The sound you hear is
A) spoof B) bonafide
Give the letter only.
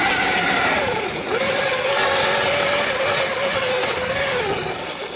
B